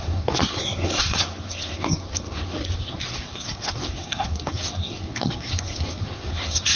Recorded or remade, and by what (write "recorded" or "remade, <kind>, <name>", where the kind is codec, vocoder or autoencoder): remade, codec, SNAC